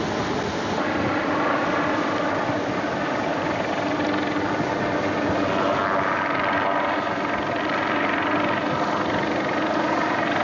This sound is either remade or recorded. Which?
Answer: recorded